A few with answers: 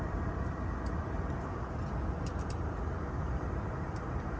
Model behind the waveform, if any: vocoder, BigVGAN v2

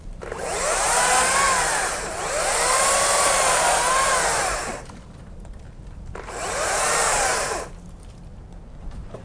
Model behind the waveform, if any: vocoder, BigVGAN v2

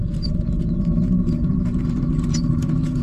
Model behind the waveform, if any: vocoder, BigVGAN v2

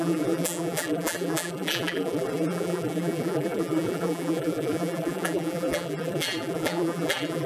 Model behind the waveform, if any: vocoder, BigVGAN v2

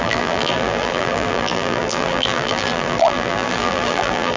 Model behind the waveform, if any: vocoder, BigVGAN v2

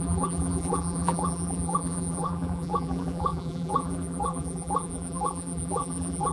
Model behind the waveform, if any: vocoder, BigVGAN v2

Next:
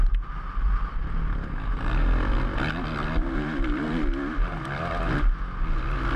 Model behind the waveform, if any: none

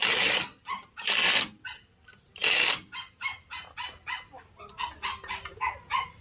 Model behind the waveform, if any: none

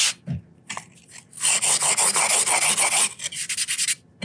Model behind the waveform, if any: none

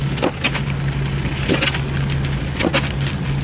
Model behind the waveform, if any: none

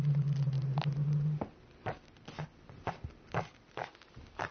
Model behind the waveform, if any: vocoder, BigVGAN v2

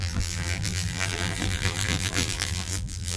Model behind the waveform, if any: vocoder, BigVGAN v2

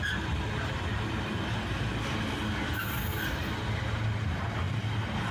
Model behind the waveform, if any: none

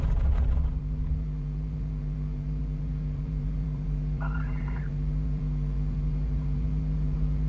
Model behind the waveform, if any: vocoder, BigVGAN v2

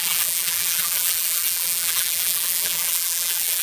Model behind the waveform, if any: vocoder, BigVGAN v2